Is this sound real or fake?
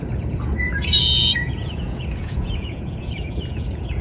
fake